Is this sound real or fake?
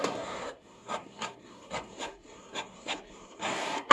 fake